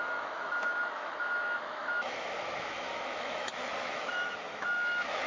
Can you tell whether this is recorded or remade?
remade